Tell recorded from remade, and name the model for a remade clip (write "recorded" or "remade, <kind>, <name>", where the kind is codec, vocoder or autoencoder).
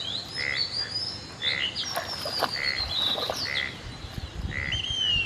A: recorded